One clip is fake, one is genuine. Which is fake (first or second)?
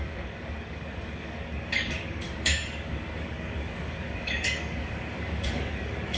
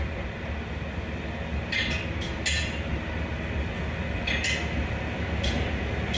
first